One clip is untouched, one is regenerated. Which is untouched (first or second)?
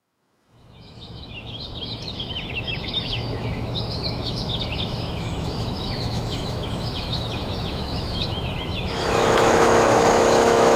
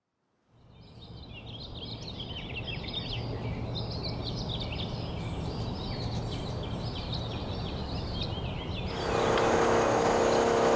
second